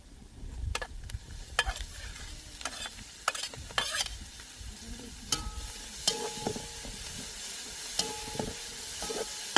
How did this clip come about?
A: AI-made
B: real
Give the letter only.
B